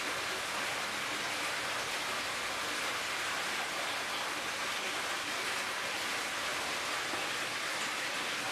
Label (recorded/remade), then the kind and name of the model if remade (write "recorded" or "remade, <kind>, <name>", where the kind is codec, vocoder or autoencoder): recorded